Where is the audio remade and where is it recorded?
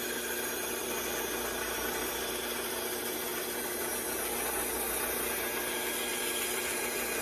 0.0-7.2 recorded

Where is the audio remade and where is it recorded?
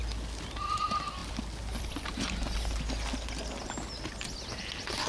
0.0-5.1 recorded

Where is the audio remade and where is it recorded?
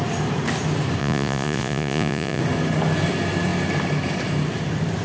0.0-1.0 recorded; 1.0-2.4 remade; 2.4-5.0 recorded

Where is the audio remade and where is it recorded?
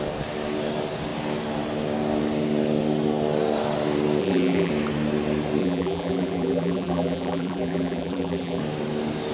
0.0-4.2 recorded; 4.2-4.7 remade; 4.7-5.6 recorded; 5.6-8.6 remade; 8.6-9.3 recorded